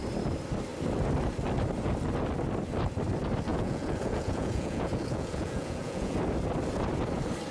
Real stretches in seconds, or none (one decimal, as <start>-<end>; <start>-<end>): 0.0-3.5; 6.2-7.5